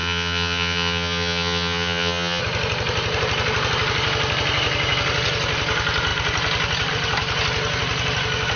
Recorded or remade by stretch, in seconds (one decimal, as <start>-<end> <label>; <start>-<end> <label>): 0.0-2.4 remade; 2.4-8.6 recorded

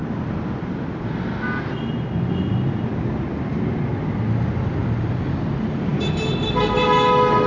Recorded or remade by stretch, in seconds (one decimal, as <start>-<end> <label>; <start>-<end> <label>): 0.0-7.5 recorded